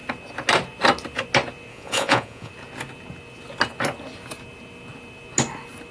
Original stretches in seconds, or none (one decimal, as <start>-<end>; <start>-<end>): 0.0-1.7; 2.5-5.9